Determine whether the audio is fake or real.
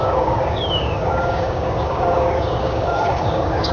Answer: fake